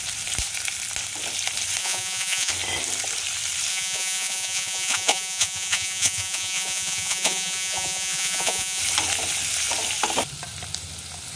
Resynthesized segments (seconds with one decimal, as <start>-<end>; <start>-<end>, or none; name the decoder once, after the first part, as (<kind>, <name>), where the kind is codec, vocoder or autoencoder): 1.8-2.5 (vocoder, Vocos); 3.7-8.8